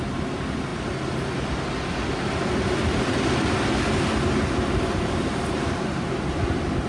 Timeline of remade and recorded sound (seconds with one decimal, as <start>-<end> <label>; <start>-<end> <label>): 0.0-6.9 recorded